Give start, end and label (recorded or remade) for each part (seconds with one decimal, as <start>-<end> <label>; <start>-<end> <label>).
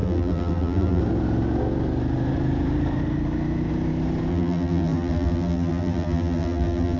0.0-1.0 remade; 1.0-4.3 recorded; 4.3-7.0 remade